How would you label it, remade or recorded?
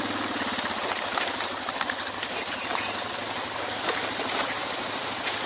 remade